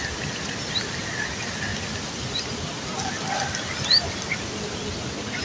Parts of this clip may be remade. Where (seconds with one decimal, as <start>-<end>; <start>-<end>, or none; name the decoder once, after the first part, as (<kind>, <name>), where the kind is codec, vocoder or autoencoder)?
none